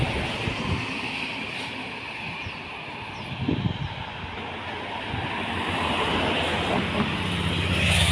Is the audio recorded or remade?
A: recorded